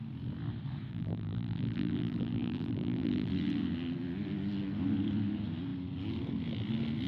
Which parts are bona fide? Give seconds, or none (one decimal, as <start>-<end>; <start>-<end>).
0.0-0.9; 3.3-7.1